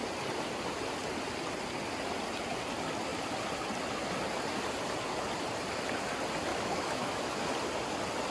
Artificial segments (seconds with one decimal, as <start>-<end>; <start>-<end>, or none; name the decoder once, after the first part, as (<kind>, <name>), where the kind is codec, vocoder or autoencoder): 6.5-7.4 (autoencoder, DAC-VAE)